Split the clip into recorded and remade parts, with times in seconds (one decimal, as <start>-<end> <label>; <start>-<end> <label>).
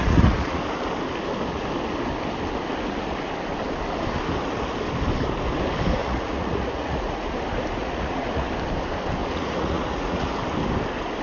0.0-0.6 remade; 0.6-6.0 recorded; 6.0-7.3 remade; 7.3-7.8 recorded; 7.8-8.5 remade; 8.5-9.2 recorded; 9.2-10.4 remade; 10.4-11.2 recorded